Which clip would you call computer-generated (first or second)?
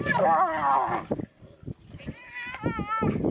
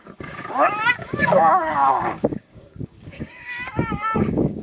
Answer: second